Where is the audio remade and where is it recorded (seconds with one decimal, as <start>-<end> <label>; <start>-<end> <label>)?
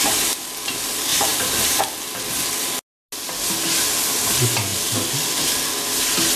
0.0-1.1 recorded; 1.1-1.8 remade; 1.8-6.4 recorded